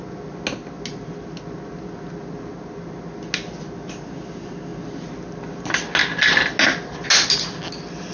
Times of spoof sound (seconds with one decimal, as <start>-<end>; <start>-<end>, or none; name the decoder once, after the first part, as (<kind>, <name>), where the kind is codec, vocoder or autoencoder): none